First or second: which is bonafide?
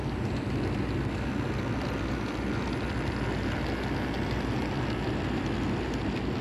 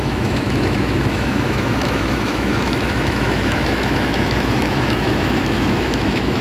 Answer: first